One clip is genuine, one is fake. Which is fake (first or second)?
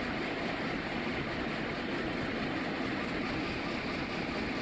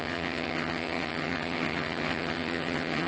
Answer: second